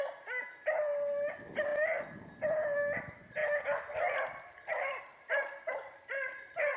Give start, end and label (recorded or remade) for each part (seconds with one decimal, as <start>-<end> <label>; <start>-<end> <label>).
0.0-6.8 recorded